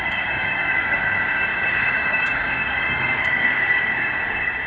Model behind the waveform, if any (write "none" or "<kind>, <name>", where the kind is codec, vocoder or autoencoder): codec, DAC